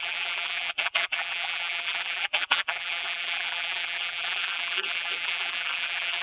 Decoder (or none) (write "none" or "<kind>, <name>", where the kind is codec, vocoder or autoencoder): vocoder, BigVGAN v2